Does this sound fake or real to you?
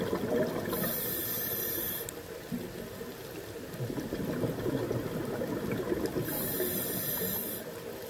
real